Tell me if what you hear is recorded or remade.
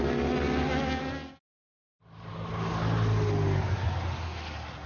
recorded